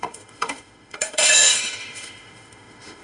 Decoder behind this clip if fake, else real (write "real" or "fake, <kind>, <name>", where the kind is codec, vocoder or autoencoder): fake, autoencoder, DAC-VAE